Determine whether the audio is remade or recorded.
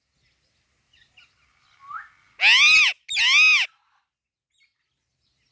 recorded